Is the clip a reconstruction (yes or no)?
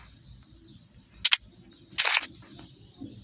no